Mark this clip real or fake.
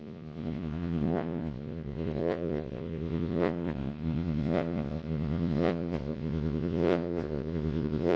fake